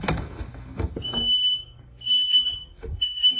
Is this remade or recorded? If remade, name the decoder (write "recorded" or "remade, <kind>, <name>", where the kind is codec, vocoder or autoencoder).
remade, codec, SNAC